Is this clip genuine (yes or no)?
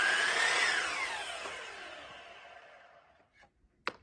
yes